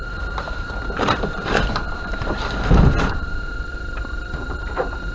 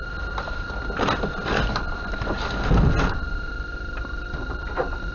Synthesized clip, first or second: first